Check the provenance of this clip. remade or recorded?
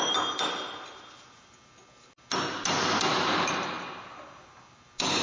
recorded